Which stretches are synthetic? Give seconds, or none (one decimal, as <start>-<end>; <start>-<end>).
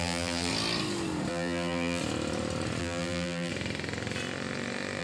0.0-0.5; 1.3-2.0; 2.8-3.5